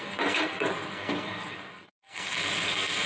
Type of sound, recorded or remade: remade